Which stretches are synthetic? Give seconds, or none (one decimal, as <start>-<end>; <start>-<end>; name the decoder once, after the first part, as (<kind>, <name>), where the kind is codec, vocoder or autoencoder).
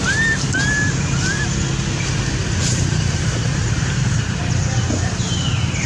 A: 2.4-4.4 (vocoder, BigVGAN v2)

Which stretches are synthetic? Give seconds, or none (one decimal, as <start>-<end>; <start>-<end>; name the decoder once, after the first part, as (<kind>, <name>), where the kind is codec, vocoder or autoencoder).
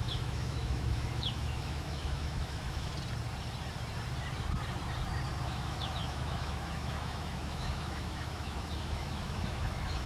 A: 0.0-2.9 (autoencoder, DAC-VAE); 5.4-10.1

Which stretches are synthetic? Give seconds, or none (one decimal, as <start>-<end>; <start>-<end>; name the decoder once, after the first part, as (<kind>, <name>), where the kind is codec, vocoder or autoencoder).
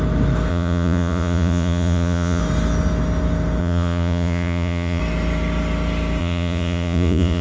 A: 0.5-2.4 (vocoder, Vocos); 3.6-5.0; 6.2-7.4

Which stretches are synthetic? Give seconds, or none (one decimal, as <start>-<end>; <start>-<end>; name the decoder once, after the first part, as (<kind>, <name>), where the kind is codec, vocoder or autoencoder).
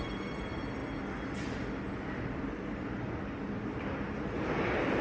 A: none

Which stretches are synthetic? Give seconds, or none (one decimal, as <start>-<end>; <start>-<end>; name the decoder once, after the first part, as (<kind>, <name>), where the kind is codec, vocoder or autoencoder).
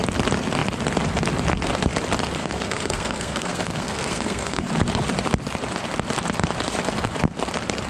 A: 2.4-4.7 (codec, SNAC)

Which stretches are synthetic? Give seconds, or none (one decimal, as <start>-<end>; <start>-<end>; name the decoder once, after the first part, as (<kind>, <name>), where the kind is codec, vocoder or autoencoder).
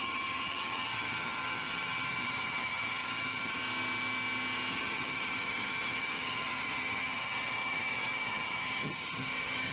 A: 0.0-3.6 (vocoder, HiFi-GAN); 4.7-9.7